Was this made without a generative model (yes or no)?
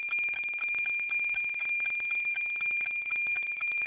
no